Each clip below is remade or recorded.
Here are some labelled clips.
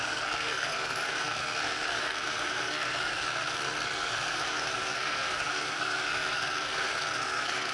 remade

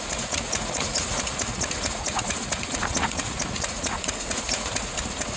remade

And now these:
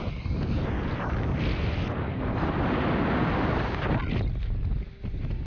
recorded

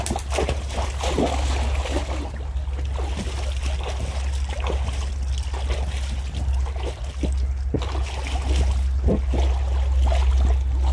recorded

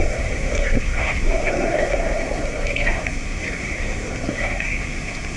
remade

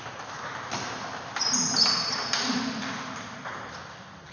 recorded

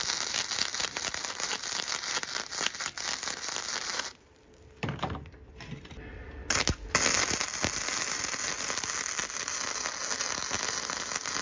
recorded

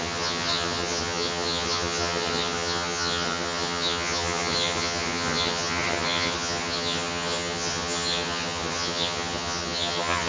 remade